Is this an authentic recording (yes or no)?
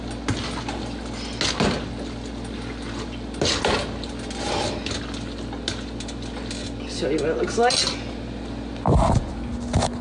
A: yes